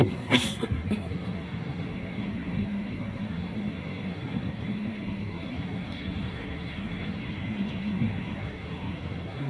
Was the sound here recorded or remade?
remade